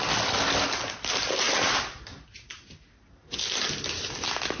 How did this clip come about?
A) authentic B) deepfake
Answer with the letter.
A